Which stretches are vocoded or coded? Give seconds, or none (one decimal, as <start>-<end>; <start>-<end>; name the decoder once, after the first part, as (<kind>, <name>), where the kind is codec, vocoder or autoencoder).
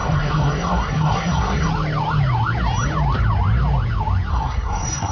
0.0-1.7 (codec, SNAC); 4.3-5.1